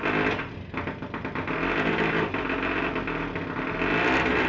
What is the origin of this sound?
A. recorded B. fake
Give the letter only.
A